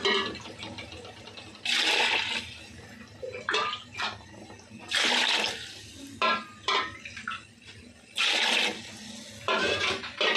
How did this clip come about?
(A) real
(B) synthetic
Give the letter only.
A